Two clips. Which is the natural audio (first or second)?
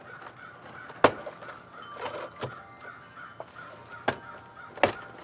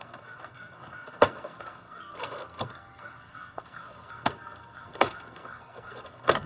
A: first